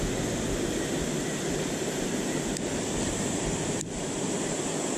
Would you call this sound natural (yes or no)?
yes